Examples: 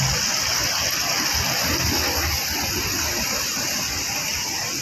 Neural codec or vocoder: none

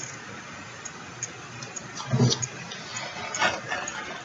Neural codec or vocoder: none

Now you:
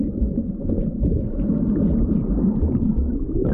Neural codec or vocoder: none